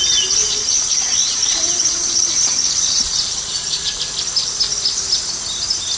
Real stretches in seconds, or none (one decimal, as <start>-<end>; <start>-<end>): 0.0-0.4; 4.0-6.0